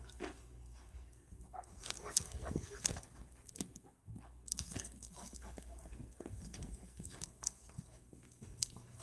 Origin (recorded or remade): remade